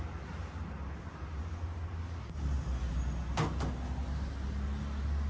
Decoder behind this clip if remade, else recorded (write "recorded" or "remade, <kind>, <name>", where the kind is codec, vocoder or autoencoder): recorded